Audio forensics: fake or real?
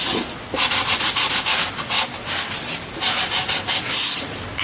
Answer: real